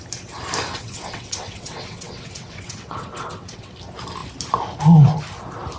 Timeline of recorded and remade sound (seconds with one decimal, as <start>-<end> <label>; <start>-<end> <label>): 0.0-0.7 recorded; 0.7-3.7 remade; 3.7-5.8 recorded